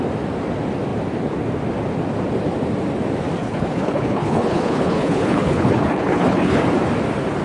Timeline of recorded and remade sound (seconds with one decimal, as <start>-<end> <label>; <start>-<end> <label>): 0.0-3.4 recorded; 3.4-6.6 remade; 6.6-7.4 recorded